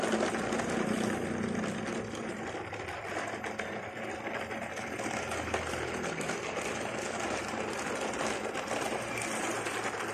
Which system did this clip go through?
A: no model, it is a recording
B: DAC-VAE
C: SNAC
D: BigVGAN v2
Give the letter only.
D